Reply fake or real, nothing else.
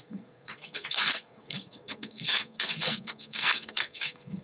fake